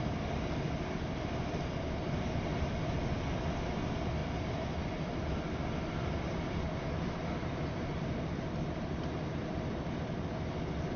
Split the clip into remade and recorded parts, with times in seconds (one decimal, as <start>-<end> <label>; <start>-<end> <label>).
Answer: 0.0-11.0 recorded